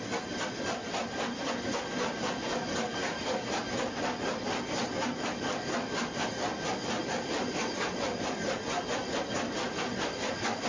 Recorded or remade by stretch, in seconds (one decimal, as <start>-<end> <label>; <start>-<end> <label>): 0.0-10.7 recorded